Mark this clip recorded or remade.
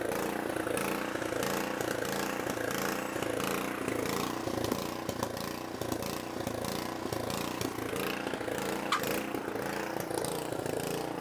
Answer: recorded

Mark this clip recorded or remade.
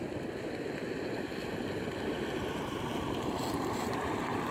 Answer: recorded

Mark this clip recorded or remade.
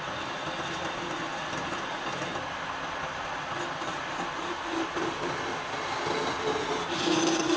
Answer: recorded